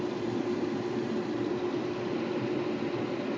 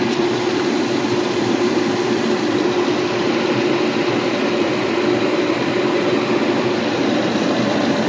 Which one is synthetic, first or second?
second